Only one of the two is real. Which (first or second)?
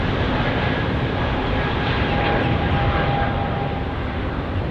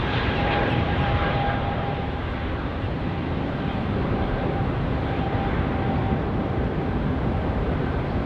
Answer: first